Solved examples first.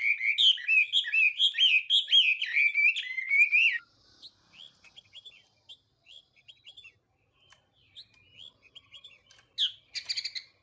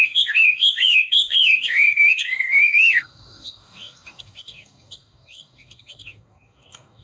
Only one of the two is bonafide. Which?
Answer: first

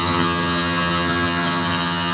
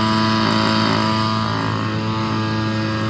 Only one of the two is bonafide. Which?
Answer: second